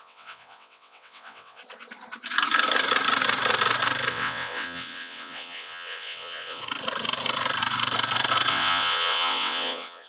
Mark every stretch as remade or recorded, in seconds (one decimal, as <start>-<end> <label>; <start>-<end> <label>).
0.0-1.6 remade; 1.6-4.1 recorded; 4.1-6.6 remade; 6.6-8.5 recorded; 8.5-10.1 remade